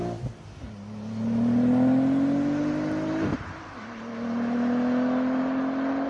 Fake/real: real